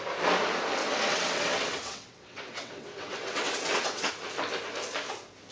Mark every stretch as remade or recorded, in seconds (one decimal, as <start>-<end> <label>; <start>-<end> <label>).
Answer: 0.0-0.8 recorded; 0.8-4.1 remade; 4.1-5.5 recorded

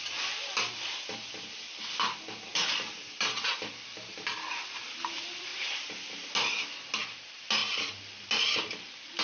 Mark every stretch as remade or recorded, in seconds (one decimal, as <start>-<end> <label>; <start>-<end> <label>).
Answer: 0.0-2.5 recorded; 2.5-3.7 remade; 3.7-5.5 recorded; 5.5-6.3 remade; 6.3-9.2 recorded

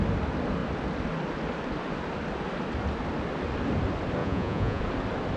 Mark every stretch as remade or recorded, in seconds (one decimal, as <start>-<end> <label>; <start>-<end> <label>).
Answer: 0.0-4.2 recorded; 4.2-4.8 remade; 4.8-5.4 recorded

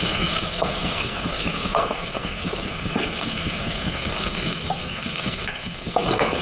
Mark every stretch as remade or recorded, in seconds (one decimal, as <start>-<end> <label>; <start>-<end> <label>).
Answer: 0.0-6.4 remade

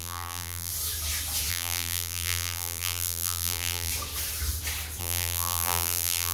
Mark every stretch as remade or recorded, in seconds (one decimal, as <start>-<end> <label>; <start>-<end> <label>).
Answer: 0.0-0.7 remade; 0.7-1.5 recorded; 1.5-3.9 remade; 3.9-5.0 recorded; 5.0-6.3 remade